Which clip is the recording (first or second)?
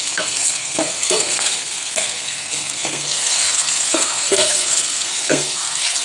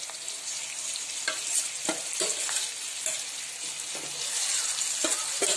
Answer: second